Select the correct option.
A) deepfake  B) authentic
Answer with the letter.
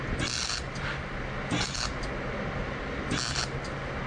B